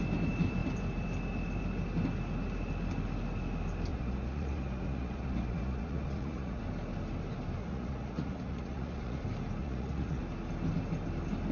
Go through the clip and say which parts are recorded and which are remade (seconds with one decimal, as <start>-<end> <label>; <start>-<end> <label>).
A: 0.0-3.9 recorded; 3.9-6.6 remade; 6.6-7.6 recorded; 7.6-9.2 remade; 9.2-9.6 recorded; 9.6-10.2 remade; 10.2-11.5 recorded